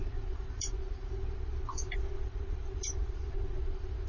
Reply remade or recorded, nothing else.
remade